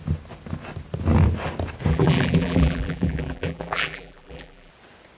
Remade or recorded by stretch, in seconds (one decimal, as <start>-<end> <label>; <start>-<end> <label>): 0.0-1.9 recorded; 1.9-4.7 remade; 4.7-5.2 recorded